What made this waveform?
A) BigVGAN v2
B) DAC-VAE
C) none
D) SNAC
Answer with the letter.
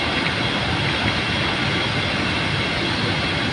C